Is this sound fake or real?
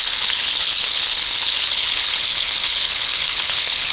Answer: fake